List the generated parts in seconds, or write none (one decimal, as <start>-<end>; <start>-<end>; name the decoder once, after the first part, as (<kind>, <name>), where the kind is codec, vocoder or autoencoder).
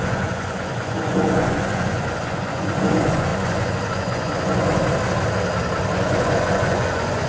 0.0-4.8 (vocoder, Vocos); 5.9-7.3